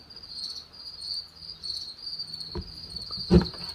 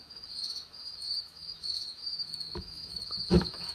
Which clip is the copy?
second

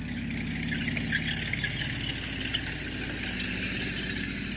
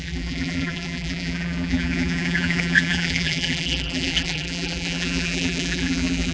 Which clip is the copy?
second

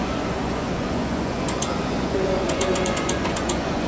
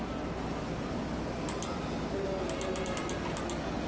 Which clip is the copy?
first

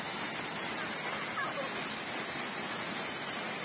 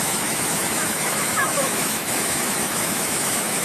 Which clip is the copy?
second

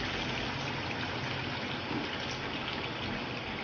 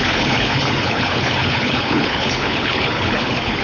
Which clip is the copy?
second